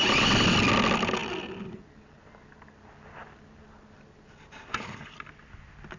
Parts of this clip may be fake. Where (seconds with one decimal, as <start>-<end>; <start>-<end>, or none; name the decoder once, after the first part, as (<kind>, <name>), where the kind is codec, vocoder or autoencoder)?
none